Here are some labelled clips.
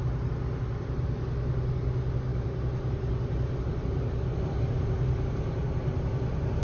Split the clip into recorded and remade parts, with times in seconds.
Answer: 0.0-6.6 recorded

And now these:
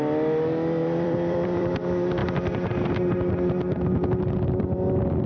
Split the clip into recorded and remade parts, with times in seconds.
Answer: 0.0-0.8 recorded; 0.8-1.7 remade; 1.7-5.3 recorded

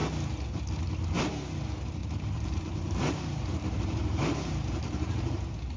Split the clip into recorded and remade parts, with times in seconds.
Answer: 0.0-2.0 recorded; 2.0-5.8 remade

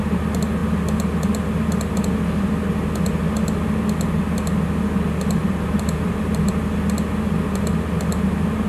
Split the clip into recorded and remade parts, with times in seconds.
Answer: 0.0-5.4 recorded; 5.4-6.5 remade; 6.5-8.7 recorded

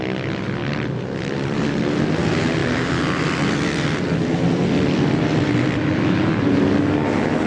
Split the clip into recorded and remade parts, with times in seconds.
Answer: 0.0-0.6 recorded; 0.6-2.2 remade; 2.2-2.6 recorded; 2.6-6.8 remade; 6.8-7.5 recorded